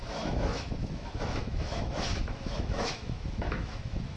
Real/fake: fake